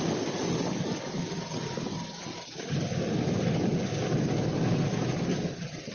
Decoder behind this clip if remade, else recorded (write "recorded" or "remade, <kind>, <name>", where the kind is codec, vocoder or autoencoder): recorded